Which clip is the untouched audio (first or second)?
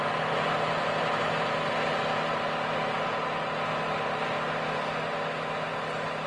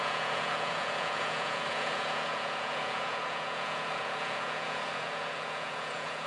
first